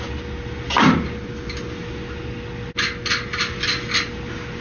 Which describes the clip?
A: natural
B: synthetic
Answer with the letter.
A